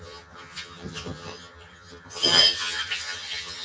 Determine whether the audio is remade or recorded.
remade